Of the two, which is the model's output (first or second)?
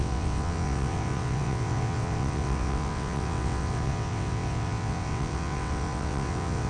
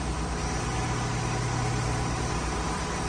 first